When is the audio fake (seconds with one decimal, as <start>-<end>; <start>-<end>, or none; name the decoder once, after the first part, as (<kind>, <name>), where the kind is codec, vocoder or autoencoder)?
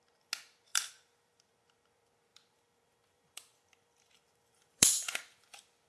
0.7-1.5 (vocoder, BigVGAN v2); 2.3-5.9